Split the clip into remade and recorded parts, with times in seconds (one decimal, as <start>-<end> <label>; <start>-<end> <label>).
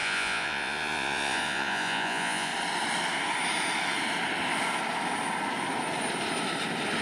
0.0-2.5 remade; 2.5-7.0 recorded